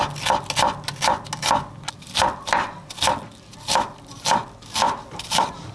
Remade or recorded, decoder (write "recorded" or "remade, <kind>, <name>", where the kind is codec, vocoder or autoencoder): recorded